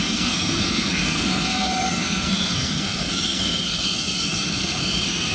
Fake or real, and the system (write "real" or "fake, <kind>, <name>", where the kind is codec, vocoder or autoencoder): fake, codec, SNAC